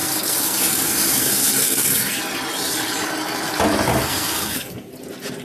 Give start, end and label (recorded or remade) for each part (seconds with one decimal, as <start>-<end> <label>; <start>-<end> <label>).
0.0-2.2 remade; 2.2-3.9 recorded; 3.9-4.9 remade; 4.9-5.4 recorded